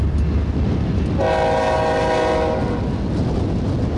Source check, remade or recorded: recorded